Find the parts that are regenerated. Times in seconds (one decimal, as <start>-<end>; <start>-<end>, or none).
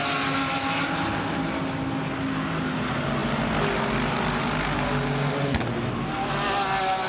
none